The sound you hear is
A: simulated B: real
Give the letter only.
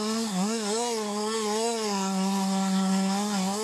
A